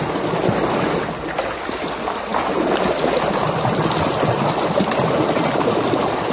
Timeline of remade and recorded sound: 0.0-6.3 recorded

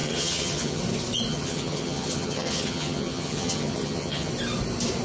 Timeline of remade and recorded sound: 0.0-0.8 remade; 0.8-1.3 recorded; 1.3-4.3 remade; 4.3-5.0 recorded

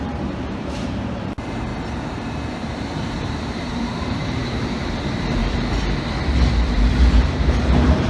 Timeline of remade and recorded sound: 0.0-1.7 remade; 1.7-2.7 recorded; 2.7-5.4 remade; 5.4-6.5 recorded; 6.5-8.1 remade